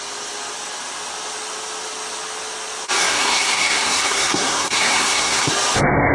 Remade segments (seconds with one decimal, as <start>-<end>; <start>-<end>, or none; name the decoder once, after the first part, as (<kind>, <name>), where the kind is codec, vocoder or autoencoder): 3.0-5.5 (codec, SNAC)